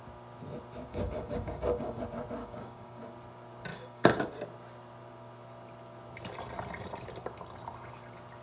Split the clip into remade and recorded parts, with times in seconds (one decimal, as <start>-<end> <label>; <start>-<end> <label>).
0.0-0.9 recorded; 0.9-2.0 remade; 2.0-2.4 recorded; 2.4-3.0 remade; 3.0-3.7 recorded; 3.7-4.3 remade; 4.3-8.4 recorded

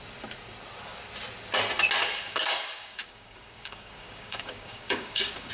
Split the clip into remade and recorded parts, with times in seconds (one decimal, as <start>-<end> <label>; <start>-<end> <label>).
0.0-2.0 recorded; 2.0-5.5 remade

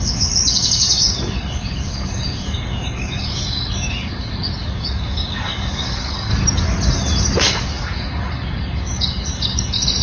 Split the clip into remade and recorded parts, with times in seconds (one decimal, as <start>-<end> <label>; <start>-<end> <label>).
0.0-6.3 remade; 6.3-7.4 recorded; 7.4-10.0 remade

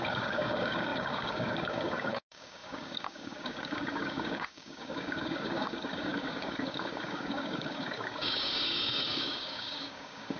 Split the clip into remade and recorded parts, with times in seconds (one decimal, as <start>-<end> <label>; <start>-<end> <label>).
0.0-10.4 remade

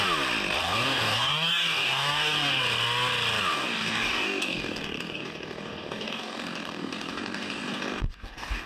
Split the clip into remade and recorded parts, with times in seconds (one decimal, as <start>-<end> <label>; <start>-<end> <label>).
0.0-0.6 recorded; 0.6-2.6 remade; 2.6-3.5 recorded; 3.5-8.7 remade

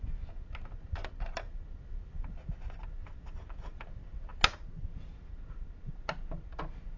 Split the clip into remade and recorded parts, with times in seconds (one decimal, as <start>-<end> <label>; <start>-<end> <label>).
0.0-7.0 recorded